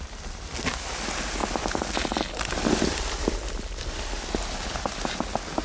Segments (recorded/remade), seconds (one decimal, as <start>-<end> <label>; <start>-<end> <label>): 0.0-1.4 recorded; 1.4-4.8 remade; 4.8-5.6 recorded